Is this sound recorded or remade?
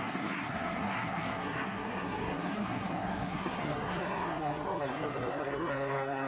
remade